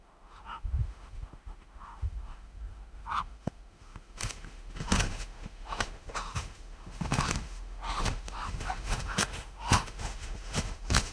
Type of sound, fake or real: fake